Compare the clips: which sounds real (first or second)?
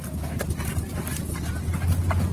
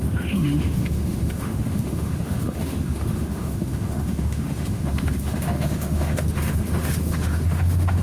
first